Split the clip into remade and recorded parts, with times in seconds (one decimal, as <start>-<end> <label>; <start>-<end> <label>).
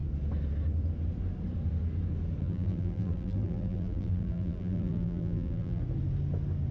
0.0-2.4 recorded; 2.4-5.8 remade; 5.8-6.7 recorded